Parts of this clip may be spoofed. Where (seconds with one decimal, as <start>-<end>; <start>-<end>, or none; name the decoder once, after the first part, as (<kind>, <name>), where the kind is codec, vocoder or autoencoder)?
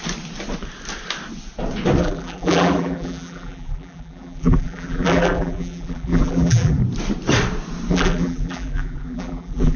2.0-6.8 (vocoder, BigVGAN v2); 7.9-9.8